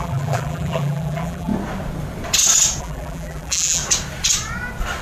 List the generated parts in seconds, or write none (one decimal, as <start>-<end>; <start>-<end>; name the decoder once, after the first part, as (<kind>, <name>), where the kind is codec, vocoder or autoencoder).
0.0-1.5 (vocoder, BigVGAN v2); 2.8-3.8